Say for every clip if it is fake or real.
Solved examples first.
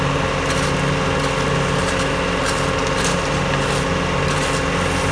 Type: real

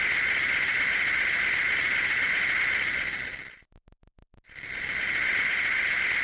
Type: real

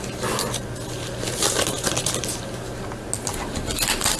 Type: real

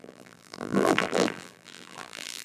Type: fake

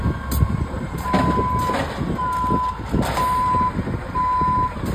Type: real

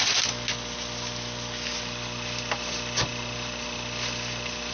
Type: real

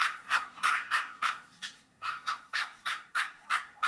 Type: fake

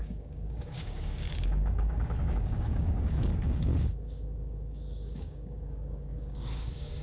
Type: fake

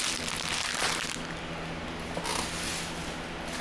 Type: real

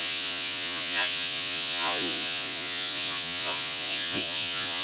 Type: fake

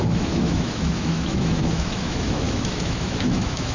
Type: fake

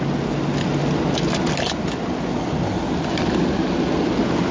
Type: real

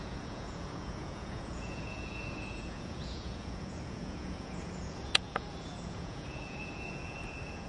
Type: fake